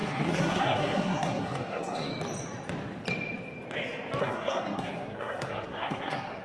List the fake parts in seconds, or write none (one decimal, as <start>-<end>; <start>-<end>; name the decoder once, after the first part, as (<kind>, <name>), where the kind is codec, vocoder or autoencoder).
0.0-2.1 (codec, SNAC); 4.2-6.4